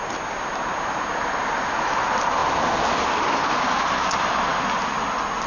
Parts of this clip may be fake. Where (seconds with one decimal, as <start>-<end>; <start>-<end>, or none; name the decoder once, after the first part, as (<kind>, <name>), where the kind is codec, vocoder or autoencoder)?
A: none